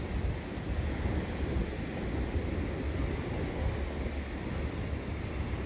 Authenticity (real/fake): real